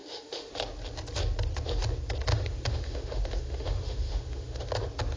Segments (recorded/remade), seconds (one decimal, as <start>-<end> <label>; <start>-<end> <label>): 0.0-0.5 remade; 0.5-2.3 recorded; 2.3-4.7 remade; 4.7-5.2 recorded